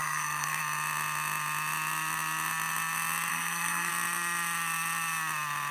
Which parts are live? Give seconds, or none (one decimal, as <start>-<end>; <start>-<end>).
0.6-3.3; 3.9-5.7